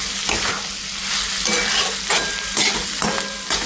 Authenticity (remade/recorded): recorded